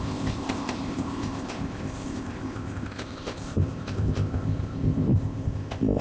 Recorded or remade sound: remade